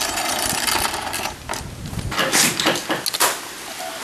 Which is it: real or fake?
real